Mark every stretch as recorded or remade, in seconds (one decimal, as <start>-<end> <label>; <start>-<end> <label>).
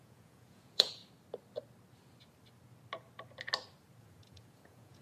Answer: 0.0-1.0 remade; 1.0-4.0 recorded; 4.0-5.0 remade